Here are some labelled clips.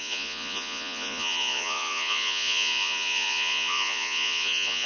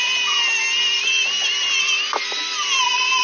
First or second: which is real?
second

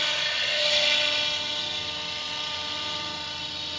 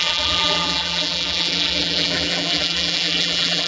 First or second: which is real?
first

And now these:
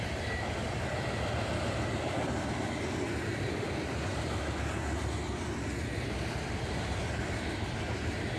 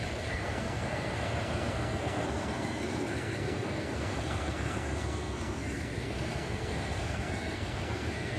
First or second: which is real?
first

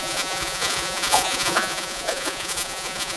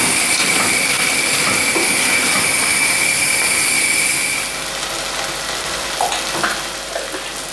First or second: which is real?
second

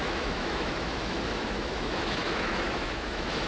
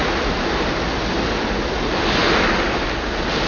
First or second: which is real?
second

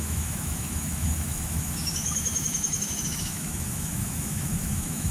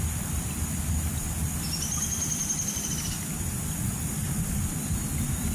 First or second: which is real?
second